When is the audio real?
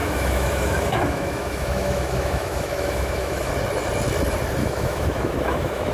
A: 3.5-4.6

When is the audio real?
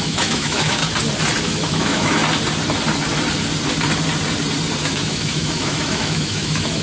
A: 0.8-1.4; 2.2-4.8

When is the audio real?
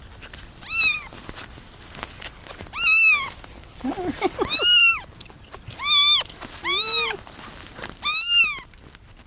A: 0.0-9.3